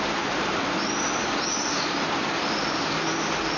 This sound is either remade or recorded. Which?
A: recorded